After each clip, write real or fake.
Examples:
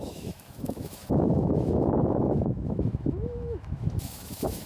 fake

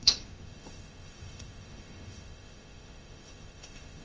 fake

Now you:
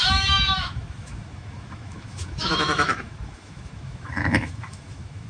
fake